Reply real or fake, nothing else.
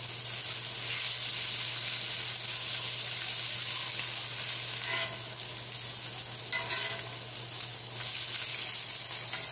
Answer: real